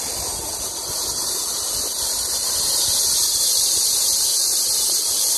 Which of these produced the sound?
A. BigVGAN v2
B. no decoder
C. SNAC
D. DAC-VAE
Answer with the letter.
B